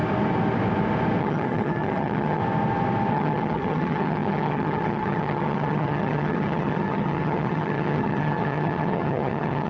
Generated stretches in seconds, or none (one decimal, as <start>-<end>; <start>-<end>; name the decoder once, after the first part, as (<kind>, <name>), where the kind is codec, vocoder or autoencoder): 1.2-2.4 (vocoder, HiFi-GAN); 3.1-9.7